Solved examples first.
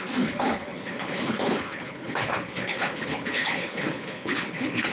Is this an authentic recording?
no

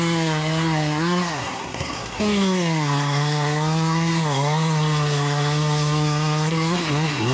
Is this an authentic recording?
no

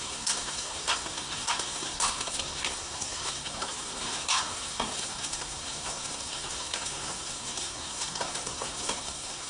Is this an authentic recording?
no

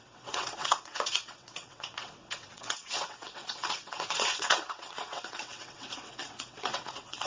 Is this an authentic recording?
no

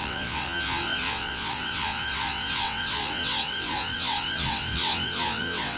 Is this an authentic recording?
no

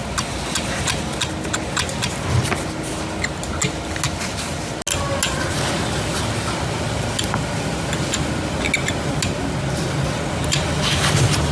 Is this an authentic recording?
yes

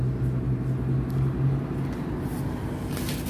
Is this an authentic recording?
yes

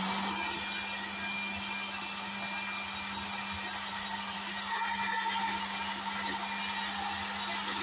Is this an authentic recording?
yes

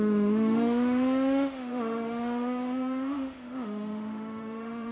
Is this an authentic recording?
no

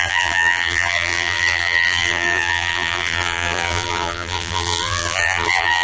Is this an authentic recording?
no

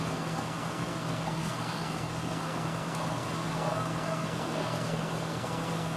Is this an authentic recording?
no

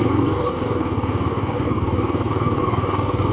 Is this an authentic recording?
no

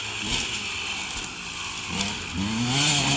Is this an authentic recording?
yes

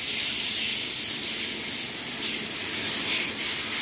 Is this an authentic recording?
yes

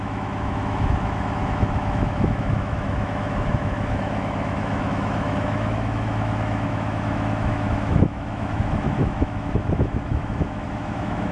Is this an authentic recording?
no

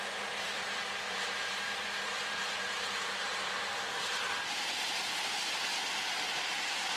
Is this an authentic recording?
no